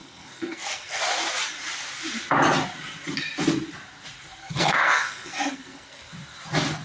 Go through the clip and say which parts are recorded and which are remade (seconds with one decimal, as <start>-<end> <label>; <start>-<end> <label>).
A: 0.0-1.0 remade; 1.0-4.3 recorded; 4.3-6.1 remade; 6.1-6.8 recorded